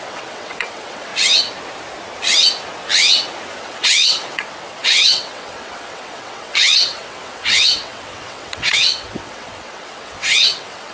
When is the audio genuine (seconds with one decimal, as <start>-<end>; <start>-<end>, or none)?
1.1-3.6